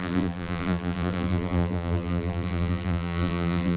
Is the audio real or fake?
fake